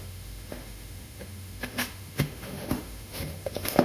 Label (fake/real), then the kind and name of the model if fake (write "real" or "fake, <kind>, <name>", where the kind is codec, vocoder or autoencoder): fake, autoencoder, DAC-VAE